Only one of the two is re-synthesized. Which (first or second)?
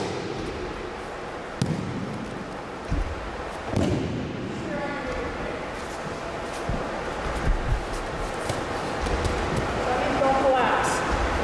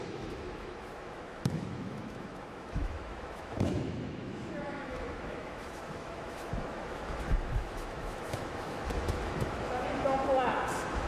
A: second